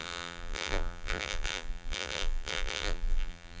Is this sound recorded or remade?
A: remade